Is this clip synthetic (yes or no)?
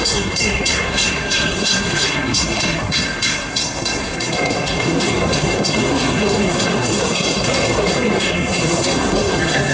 yes